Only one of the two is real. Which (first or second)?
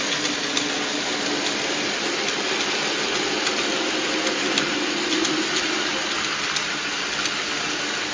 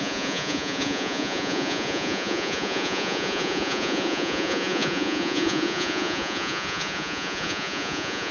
first